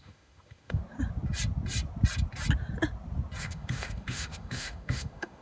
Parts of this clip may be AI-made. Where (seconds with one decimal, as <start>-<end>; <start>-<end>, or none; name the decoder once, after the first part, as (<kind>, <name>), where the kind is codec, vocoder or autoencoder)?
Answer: 0.0-0.8 (autoencoder, DAC-VAE); 3.4-5.4